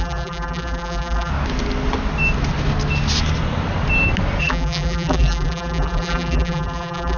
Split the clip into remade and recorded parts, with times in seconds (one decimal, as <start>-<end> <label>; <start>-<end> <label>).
0.0-1.3 remade; 1.3-4.4 recorded; 4.4-7.2 remade